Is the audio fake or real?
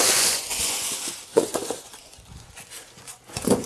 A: fake